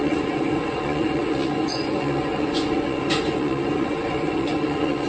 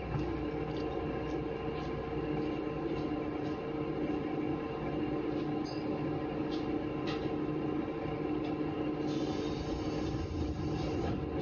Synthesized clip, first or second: first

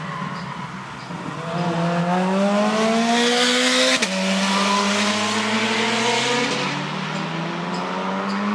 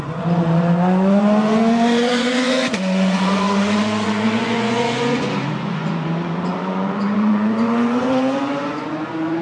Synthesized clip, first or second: second